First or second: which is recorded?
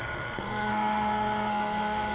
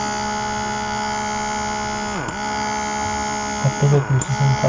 second